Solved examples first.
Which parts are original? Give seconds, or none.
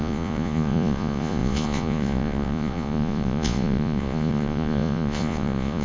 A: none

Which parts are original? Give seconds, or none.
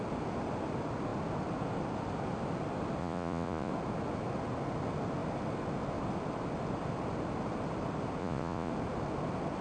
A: 0.0-3.0; 3.7-8.2; 8.7-9.6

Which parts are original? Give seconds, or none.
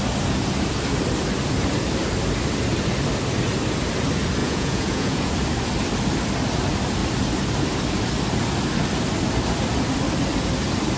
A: 0.0-4.4; 5.3-11.0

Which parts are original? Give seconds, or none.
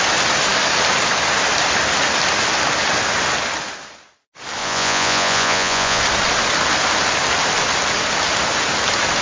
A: 0.0-4.6; 6.0-9.2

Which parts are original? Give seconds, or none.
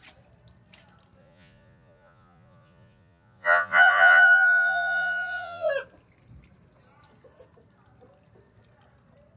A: 0.0-1.2; 5.7-9.4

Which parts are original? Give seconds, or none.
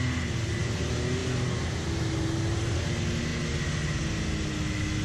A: 0.0-5.0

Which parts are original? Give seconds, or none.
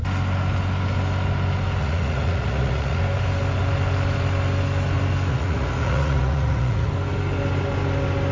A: 0.0-1.8; 3.0-5.3; 6.9-8.3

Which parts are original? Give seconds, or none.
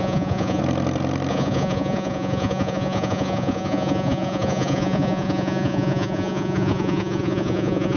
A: 0.6-1.3